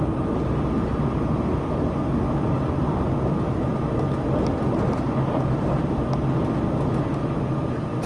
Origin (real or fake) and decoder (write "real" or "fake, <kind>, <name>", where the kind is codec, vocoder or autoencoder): real